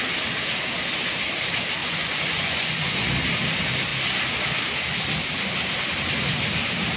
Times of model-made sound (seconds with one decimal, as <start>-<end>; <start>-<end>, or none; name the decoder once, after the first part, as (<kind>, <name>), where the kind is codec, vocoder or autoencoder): 1.8-3.1 (vocoder, Vocos)